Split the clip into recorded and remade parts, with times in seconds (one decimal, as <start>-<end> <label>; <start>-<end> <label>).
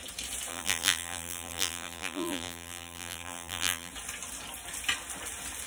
0.0-0.5 recorded; 0.5-3.9 remade; 3.9-5.7 recorded